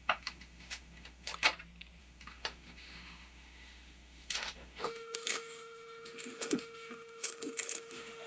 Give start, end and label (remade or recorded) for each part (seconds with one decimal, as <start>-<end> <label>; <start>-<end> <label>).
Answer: 0.0-1.3 remade; 1.3-2.0 recorded; 2.0-8.3 remade